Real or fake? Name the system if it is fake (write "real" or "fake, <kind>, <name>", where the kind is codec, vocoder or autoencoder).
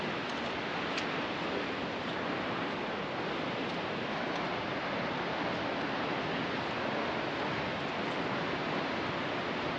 real